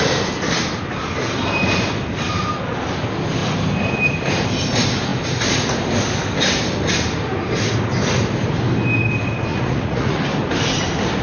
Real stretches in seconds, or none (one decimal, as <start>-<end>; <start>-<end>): 0.0-9.5; 10.2-11.2